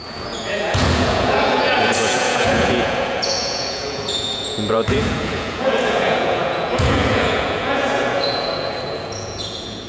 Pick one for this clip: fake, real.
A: fake